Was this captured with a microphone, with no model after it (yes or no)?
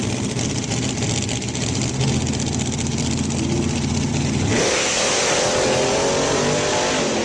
yes